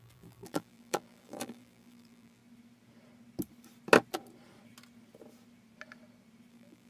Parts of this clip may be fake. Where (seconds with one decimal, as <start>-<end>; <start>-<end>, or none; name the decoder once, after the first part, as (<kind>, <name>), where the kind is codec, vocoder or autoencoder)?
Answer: 0.0-2.4 (vocoder, BigVGAN v2); 6.5-6.9